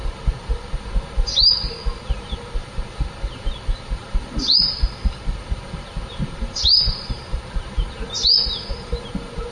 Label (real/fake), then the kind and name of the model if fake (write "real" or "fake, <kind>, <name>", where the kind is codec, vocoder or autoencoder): fake, vocoder, BigVGAN v2